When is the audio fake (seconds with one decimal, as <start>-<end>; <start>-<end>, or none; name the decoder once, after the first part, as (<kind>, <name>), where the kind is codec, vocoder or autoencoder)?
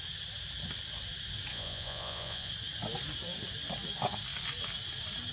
1.5-2.5 (vocoder, Vocos)